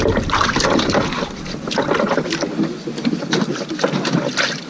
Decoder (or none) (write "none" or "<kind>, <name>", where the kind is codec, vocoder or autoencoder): none